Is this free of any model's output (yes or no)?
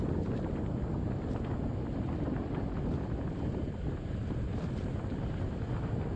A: yes